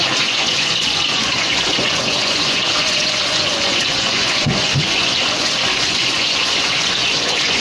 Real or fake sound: fake